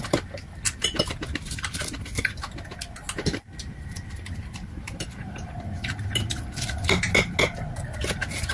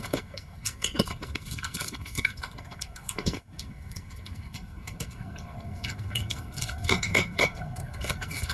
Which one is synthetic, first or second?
second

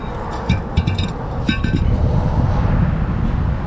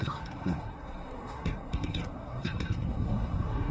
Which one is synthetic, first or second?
second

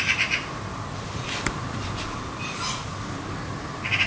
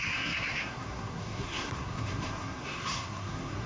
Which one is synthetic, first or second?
second